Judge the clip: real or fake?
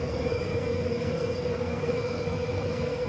fake